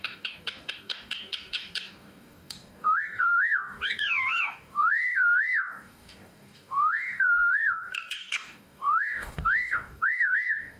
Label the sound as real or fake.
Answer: fake